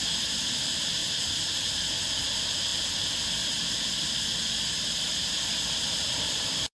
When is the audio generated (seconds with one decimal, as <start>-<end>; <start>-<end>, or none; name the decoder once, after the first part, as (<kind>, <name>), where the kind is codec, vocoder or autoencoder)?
0.0-4.3 (vocoder, BigVGAN v2); 5.3-6.7